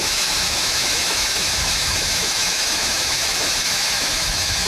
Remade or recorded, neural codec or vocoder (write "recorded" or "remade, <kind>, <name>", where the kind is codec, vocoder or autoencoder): remade, autoencoder, DAC-VAE